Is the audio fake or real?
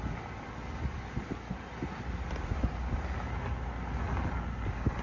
real